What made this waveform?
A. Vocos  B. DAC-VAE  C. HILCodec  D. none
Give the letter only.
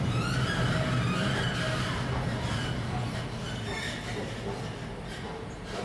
D